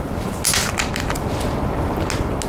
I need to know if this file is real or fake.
real